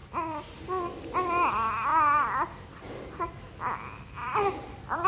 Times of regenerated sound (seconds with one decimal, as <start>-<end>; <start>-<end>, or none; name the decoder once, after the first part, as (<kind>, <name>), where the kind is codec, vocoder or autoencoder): 4.2-5.1 (vocoder, BigVGAN v2)